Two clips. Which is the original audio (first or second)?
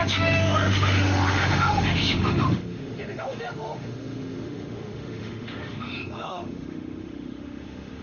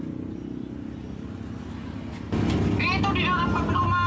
second